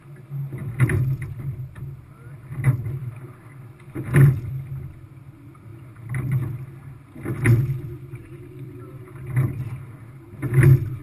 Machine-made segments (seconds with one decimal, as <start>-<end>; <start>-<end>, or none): 0.6-4.5; 8.2-8.9